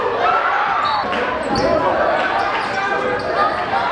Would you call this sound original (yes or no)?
yes